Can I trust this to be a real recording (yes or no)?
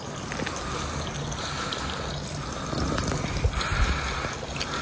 yes